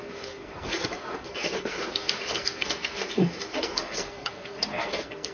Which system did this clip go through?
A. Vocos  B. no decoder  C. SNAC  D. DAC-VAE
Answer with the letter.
C